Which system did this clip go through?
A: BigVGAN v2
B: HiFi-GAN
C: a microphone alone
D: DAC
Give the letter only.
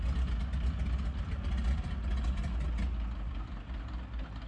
C